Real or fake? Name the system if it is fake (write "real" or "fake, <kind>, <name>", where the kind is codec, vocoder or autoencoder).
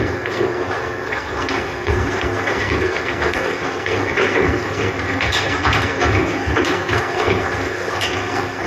fake, codec, SNAC